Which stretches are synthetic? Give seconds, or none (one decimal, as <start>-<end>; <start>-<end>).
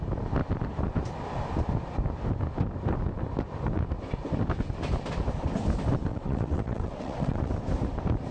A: 6.1-7.5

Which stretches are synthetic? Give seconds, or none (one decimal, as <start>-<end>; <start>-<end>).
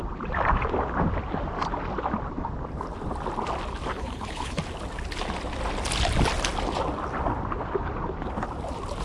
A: 3.9-4.6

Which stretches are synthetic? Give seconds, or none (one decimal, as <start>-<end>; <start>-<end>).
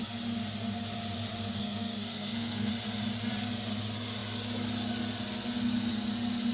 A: 1.6-2.7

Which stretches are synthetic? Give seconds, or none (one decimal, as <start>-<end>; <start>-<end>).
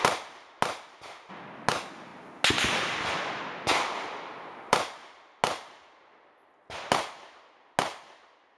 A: none